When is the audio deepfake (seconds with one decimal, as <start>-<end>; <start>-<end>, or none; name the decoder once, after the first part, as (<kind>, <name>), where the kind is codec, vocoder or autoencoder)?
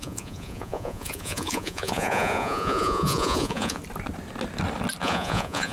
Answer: 0.0-3.8 (vocoder, Vocos); 5.0-5.7